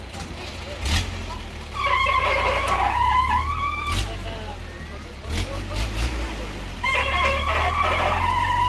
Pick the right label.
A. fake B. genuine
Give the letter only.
B